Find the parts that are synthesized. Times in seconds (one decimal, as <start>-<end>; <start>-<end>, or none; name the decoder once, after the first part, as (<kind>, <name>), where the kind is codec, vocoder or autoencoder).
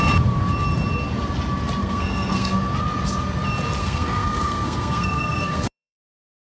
1.8-2.6 (codec, SNAC); 3.8-6.4